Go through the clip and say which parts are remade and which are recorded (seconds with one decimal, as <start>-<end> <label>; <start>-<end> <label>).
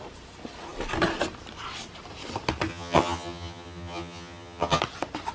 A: 0.0-2.7 recorded; 2.7-4.8 remade; 4.8-5.3 recorded